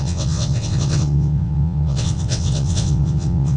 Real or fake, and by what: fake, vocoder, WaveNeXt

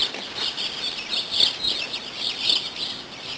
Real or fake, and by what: real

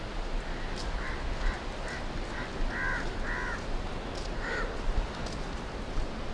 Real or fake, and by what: real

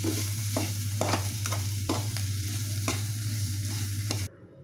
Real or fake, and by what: fake, vocoder, BigVGAN v2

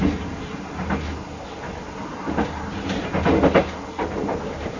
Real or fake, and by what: real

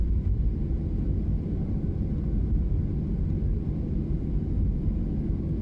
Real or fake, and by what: real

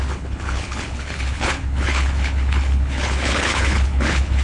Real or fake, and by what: fake, codec, HILCodec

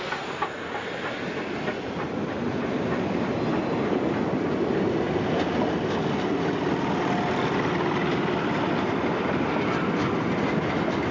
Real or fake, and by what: real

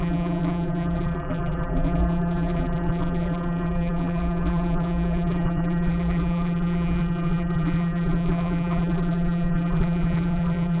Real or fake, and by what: fake, vocoder, BigVGAN v2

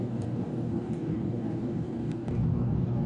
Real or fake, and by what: fake, codec, DAC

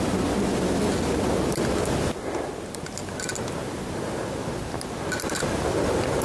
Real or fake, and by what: real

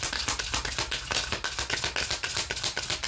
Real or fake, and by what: real